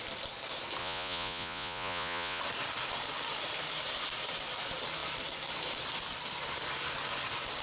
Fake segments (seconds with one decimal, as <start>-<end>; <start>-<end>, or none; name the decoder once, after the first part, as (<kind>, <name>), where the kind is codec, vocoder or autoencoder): 0.8-2.4 (vocoder, Vocos)